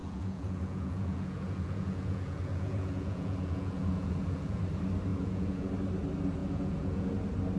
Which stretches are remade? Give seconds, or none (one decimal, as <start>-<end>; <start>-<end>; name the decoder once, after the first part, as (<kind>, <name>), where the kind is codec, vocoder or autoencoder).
0.0-4.6 (vocoder, Vocos); 5.1-5.7; 6.4-7.1